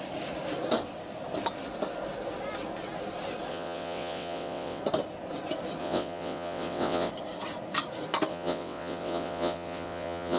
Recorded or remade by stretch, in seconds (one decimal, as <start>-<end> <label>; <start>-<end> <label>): 0.0-3.5 recorded; 3.5-4.8 remade; 4.8-5.8 recorded; 5.8-7.1 remade; 7.1-8.3 recorded; 8.3-10.4 remade